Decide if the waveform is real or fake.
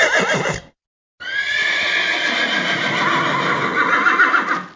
real